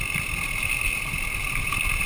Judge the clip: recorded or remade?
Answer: recorded